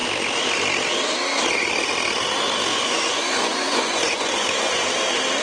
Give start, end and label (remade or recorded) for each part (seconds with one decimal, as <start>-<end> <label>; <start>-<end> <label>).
0.0-2.7 recorded; 2.7-4.9 remade; 4.9-5.4 recorded